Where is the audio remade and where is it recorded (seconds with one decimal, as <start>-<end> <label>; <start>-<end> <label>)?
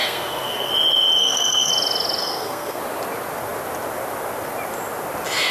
0.0-0.7 remade; 0.7-1.2 recorded; 1.2-1.7 remade; 1.7-2.2 recorded; 2.2-2.8 remade; 2.8-5.5 recorded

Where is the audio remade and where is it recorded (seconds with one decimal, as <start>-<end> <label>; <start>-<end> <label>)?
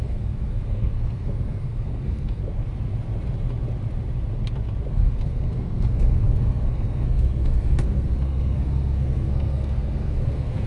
0.0-2.4 remade; 2.4-4.9 recorded; 4.9-10.7 remade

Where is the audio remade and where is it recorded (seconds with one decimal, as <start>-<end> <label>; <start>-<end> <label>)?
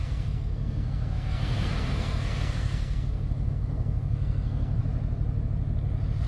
0.0-4.8 remade; 4.8-6.3 recorded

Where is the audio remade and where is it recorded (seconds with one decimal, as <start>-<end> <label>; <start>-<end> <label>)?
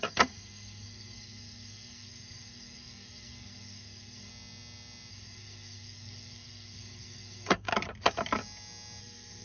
0.0-4.3 remade; 4.3-5.1 recorded; 5.1-7.7 remade; 7.7-9.0 recorded; 9.0-9.4 remade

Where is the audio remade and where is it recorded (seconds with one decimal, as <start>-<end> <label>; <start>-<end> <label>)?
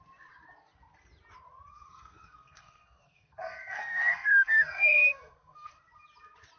0.0-1.7 recorded; 1.7-5.7 remade; 5.7-6.6 recorded